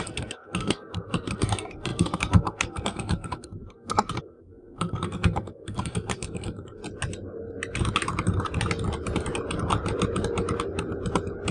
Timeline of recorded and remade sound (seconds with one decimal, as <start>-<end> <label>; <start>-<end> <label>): 0.0-6.8 remade; 6.8-11.5 recorded